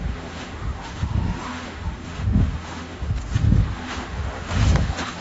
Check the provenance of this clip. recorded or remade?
remade